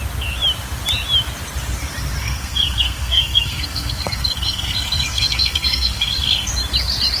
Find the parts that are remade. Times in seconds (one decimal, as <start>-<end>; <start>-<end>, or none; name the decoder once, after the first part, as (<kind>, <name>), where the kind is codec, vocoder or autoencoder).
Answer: 2.2-6.5 (codec, SNAC)